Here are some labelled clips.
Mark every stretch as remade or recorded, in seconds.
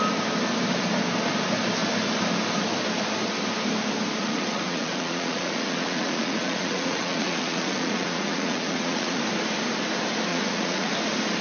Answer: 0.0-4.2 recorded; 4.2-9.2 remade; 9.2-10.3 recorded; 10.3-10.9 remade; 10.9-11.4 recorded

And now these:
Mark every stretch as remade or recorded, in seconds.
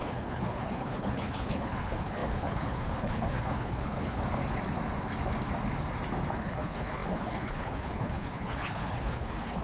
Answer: 0.0-4.4 remade; 4.4-6.3 recorded; 6.3-9.6 remade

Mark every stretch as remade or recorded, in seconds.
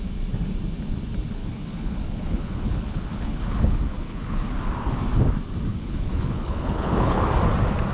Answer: 0.0-1.4 recorded; 1.4-4.6 remade; 4.6-5.7 recorded; 5.7-7.3 remade; 7.3-7.9 recorded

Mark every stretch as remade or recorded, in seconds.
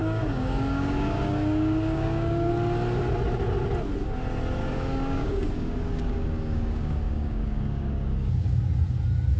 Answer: 0.0-2.5 remade; 2.5-4.6 recorded; 4.6-8.6 remade; 8.6-9.4 recorded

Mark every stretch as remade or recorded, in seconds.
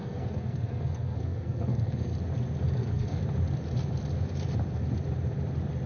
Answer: 0.0-2.1 remade; 2.1-2.7 recorded; 2.7-3.2 remade; 3.2-5.9 recorded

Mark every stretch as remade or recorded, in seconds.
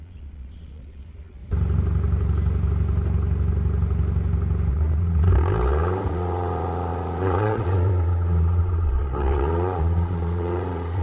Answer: 0.0-1.4 remade; 1.4-4.7 recorded; 4.7-5.3 remade; 5.3-6.1 recorded; 6.1-11.0 remade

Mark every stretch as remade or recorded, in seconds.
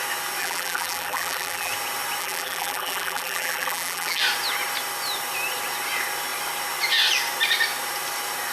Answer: 0.0-0.4 recorded; 0.4-1.7 remade; 1.7-2.2 recorded; 2.2-4.2 remade; 4.2-8.5 recorded